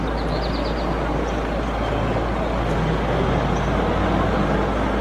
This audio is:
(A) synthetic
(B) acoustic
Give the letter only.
B